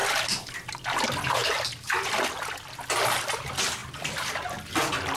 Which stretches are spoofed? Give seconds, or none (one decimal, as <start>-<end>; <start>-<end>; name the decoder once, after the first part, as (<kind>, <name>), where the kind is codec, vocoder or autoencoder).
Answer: none